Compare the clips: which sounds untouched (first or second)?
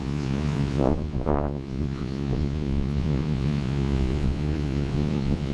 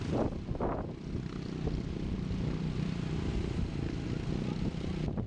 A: second